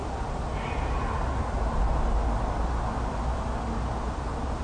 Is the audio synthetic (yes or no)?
no